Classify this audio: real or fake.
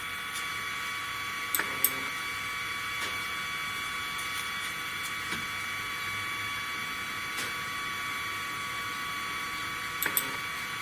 real